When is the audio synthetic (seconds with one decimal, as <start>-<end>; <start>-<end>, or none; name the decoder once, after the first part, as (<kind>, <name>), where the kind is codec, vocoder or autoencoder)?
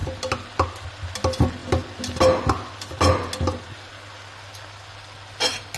none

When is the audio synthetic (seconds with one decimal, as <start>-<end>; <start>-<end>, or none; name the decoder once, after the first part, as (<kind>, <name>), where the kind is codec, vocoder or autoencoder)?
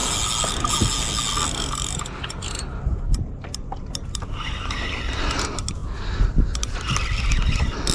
none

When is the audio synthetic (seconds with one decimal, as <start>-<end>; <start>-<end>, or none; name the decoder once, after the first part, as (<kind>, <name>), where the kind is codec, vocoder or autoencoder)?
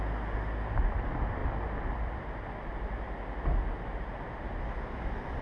none